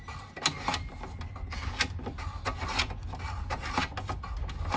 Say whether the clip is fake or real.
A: real